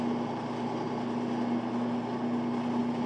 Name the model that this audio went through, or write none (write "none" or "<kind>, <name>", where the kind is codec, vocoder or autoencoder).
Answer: none